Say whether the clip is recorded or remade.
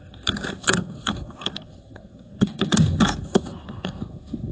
remade